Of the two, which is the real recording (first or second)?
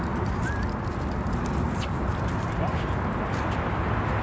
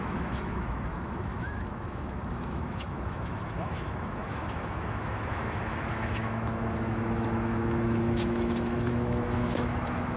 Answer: first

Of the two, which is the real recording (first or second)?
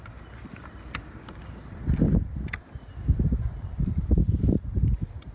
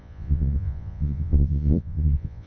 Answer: first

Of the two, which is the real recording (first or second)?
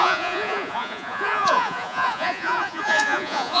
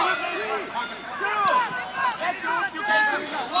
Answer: second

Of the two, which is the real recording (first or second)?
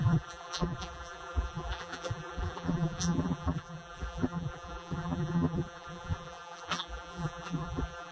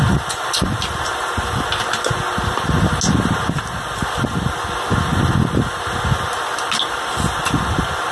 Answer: second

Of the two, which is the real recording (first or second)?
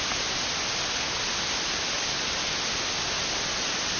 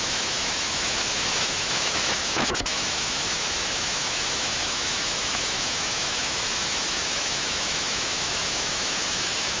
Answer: first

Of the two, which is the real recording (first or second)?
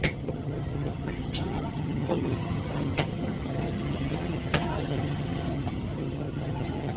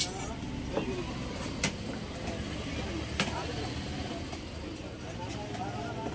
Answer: second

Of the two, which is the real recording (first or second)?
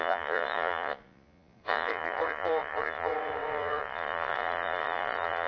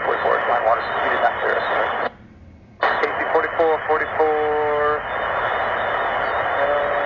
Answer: second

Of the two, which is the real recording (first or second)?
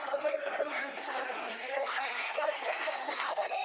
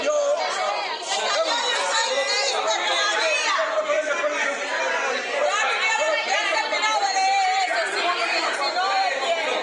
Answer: second